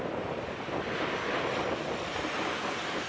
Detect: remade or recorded recorded